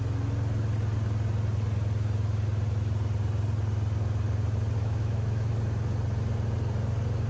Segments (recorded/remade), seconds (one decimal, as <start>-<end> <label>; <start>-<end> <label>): 0.0-4.8 recorded; 4.8-5.5 remade; 5.5-7.3 recorded